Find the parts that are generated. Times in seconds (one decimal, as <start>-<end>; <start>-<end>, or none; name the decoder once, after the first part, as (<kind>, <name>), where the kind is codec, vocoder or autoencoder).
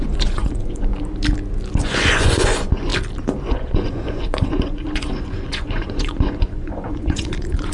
0.0-0.9 (vocoder, Vocos); 1.8-2.9; 3.5-7.7